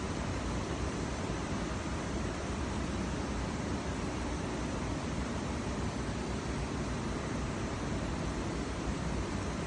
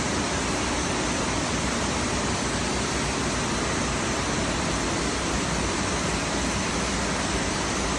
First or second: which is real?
second